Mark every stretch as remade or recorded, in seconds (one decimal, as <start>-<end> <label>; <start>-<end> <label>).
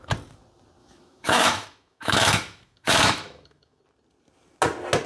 0.0-0.8 recorded; 0.8-3.8 remade; 3.8-5.1 recorded